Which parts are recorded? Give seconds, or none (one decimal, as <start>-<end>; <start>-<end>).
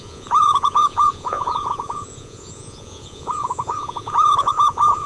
none